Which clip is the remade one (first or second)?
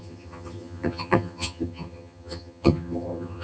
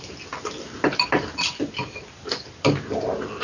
first